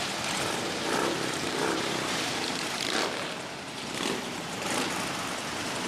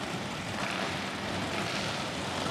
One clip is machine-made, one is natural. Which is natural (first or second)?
second